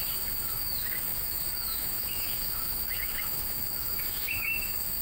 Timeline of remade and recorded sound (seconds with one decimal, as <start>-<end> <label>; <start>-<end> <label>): 0.0-5.0 remade